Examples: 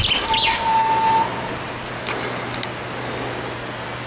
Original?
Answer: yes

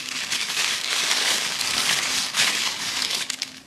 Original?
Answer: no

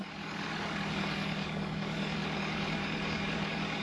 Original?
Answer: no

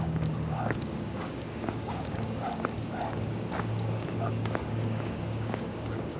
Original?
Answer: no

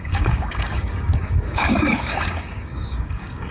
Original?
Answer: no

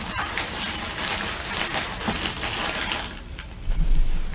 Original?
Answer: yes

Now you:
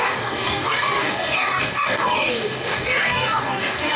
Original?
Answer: no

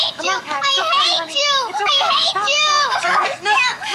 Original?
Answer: no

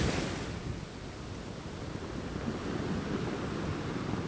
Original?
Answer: yes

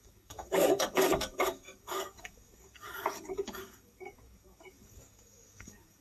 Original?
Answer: no